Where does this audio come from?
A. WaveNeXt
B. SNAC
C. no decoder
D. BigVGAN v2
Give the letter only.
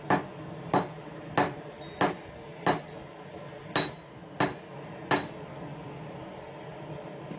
C